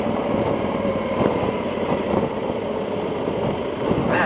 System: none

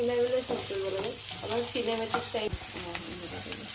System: none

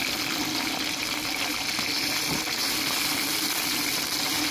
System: none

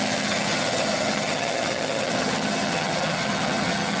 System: vocoder, HiFi-GAN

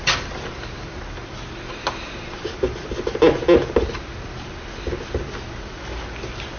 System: none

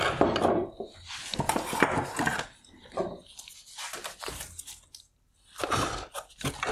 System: none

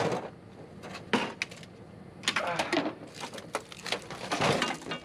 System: none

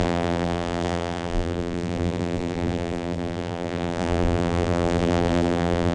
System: vocoder, BigVGAN v2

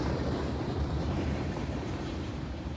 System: vocoder, BigVGAN v2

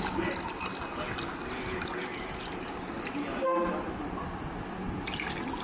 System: none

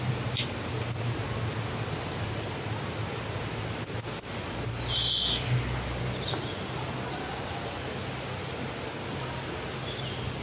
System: none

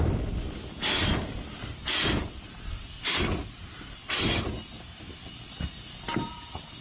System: none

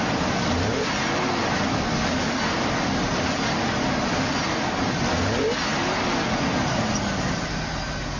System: none